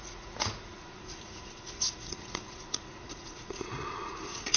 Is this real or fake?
fake